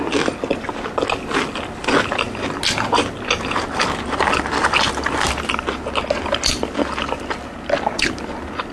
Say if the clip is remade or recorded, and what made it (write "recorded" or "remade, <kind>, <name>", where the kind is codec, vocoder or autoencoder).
recorded